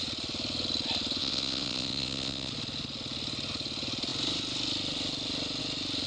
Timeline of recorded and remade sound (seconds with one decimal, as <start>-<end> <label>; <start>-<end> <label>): 0.0-1.2 recorded; 1.2-2.5 remade; 2.5-6.1 recorded